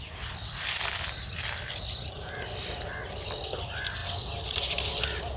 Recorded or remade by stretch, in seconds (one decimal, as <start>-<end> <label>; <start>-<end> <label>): 0.0-5.4 recorded